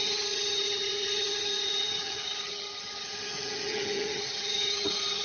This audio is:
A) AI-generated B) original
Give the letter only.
A